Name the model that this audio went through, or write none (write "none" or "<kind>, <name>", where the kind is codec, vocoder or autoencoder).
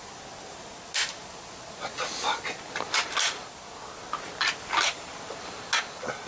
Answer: none